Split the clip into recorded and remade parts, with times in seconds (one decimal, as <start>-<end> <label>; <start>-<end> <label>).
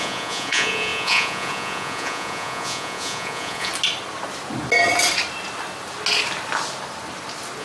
0.0-3.7 remade; 3.7-7.6 recorded